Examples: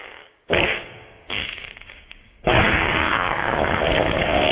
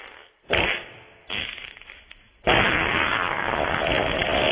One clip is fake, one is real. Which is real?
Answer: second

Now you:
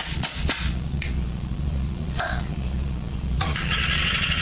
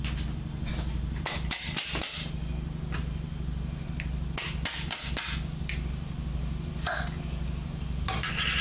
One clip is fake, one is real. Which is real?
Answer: second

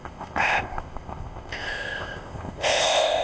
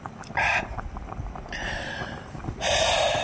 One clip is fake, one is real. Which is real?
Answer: second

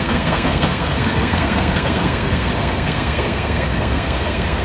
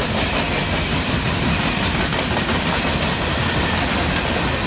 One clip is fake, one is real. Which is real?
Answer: second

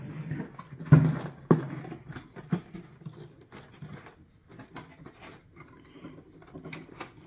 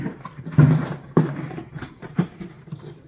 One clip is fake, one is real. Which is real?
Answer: first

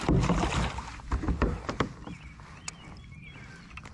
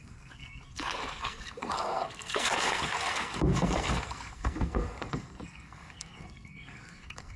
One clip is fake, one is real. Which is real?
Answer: first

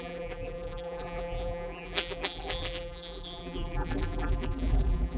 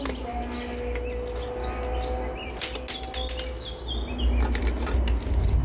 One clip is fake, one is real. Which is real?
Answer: second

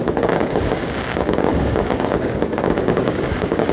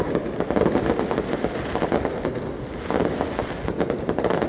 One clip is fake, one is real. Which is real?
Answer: second